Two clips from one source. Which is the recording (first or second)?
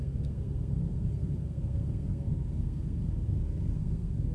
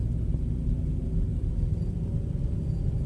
second